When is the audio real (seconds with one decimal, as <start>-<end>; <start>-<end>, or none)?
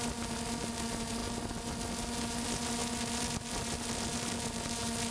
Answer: 0.0-5.1